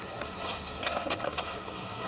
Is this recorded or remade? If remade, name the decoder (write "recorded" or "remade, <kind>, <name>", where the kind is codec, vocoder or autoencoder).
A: remade, codec, SNAC